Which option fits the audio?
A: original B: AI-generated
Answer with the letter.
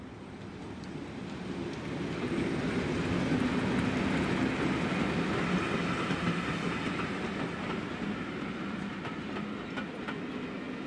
A